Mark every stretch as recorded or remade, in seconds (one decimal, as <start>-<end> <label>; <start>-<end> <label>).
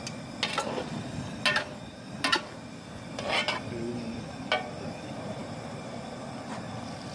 0.0-7.1 recorded